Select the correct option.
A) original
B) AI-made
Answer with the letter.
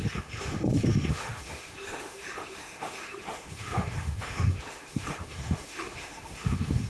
B